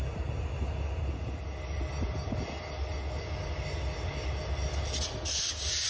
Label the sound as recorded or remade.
recorded